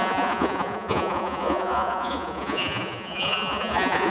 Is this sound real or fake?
fake